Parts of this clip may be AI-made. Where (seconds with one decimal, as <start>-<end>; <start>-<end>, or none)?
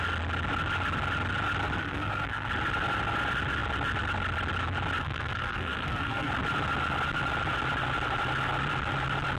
1.8-2.5; 5.0-6.3